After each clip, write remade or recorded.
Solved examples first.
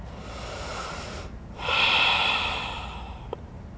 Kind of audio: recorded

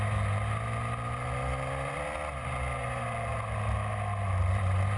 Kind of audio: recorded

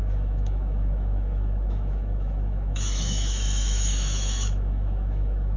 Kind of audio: remade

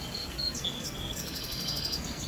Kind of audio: remade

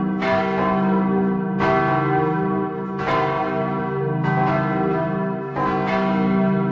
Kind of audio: recorded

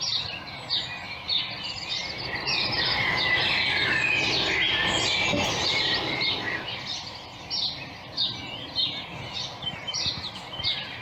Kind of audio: recorded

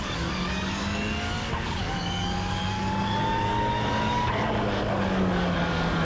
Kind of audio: remade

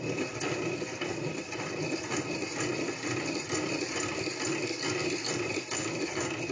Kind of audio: recorded